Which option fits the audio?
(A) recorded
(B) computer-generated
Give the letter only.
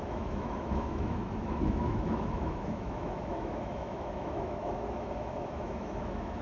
B